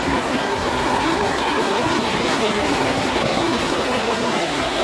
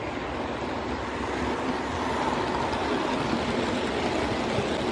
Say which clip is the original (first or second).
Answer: second